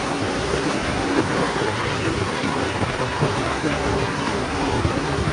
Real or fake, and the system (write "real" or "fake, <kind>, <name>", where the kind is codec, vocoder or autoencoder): fake, codec, SNAC